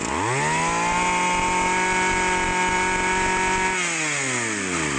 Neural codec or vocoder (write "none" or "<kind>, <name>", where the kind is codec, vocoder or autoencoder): none